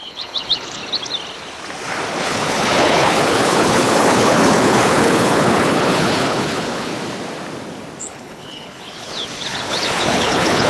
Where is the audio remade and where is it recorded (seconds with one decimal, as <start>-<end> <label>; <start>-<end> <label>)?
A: 0.0-0.8 remade; 0.8-2.2 recorded; 2.2-6.9 remade; 6.9-8.0 recorded; 8.0-10.7 remade

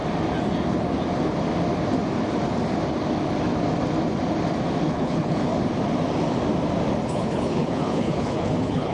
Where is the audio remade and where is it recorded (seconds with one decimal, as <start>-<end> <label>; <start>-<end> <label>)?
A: 0.0-4.9 recorded; 4.9-5.5 remade; 5.5-7.1 recorded; 7.1-8.9 remade

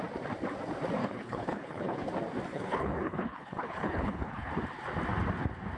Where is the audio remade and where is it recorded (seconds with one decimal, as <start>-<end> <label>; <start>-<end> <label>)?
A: 0.0-1.0 recorded; 1.0-2.1 remade; 2.1-2.5 recorded; 2.5-4.5 remade; 4.5-5.8 recorded

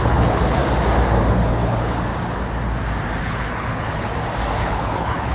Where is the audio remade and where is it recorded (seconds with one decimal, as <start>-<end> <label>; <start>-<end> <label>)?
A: 0.0-0.6 remade; 0.6-1.3 recorded; 1.3-2.1 remade; 2.1-3.2 recorded; 3.2-4.1 remade; 4.1-4.6 recorded; 4.6-5.3 remade